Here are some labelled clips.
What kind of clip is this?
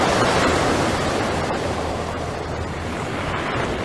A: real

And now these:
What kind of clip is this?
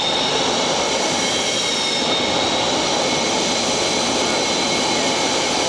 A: real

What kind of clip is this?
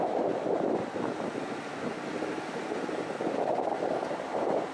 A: real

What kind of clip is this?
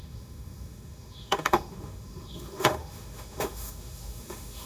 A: fake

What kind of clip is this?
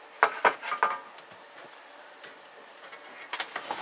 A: real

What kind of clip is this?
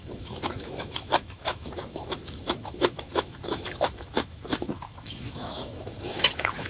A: fake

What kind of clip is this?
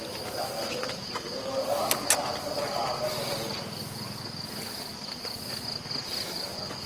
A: real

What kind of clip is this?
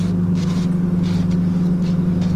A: real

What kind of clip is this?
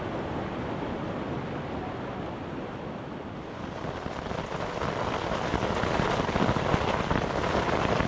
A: real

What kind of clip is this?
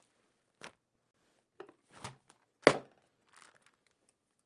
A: real